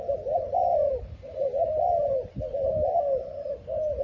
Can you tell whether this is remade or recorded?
recorded